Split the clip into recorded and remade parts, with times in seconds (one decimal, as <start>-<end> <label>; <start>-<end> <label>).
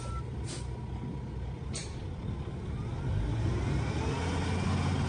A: 0.0-5.1 recorded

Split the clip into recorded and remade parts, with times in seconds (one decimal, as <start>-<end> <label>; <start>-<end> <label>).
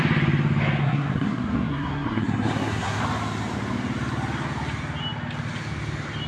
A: 0.0-0.8 recorded; 0.8-3.0 remade; 3.0-6.3 recorded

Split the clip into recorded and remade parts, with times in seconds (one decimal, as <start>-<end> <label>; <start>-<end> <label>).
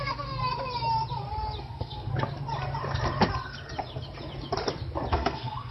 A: 0.0-0.4 remade; 0.4-1.6 recorded; 1.6-2.1 remade; 2.1-5.1 recorded; 5.1-5.7 remade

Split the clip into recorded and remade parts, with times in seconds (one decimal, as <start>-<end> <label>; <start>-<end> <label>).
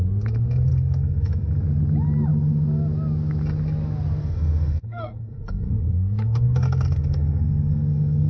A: 0.0-0.7 recorded; 0.7-1.5 remade; 1.5-4.2 recorded; 4.2-8.3 remade